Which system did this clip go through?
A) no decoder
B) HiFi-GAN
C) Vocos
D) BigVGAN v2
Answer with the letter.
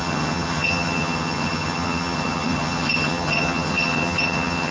B